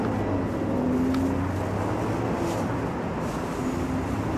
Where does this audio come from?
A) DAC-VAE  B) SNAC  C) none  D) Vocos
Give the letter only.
C